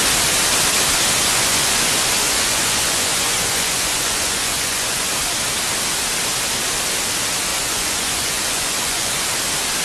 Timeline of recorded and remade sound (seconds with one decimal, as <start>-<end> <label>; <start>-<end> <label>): 0.0-1.2 recorded; 1.2-5.1 remade; 5.1-7.5 recorded; 7.5-9.2 remade; 9.2-9.8 recorded

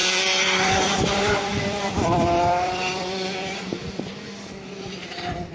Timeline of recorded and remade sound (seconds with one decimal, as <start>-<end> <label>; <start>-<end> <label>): 0.0-5.5 remade

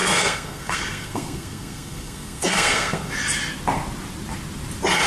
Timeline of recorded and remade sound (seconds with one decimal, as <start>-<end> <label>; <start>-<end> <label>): 0.0-3.1 remade; 3.1-5.1 recorded